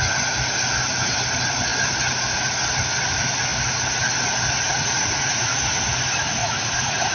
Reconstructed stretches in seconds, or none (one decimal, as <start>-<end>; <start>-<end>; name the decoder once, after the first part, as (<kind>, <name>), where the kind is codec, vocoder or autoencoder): 4.7-5.6 (vocoder, Vocos); 6.4-7.1